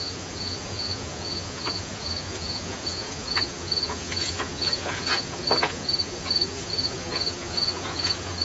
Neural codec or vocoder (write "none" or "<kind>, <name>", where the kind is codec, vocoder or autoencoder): vocoder, Vocos